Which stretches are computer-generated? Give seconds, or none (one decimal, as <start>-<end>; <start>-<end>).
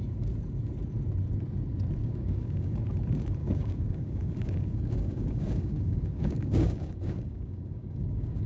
2.0-2.8; 3.4-8.5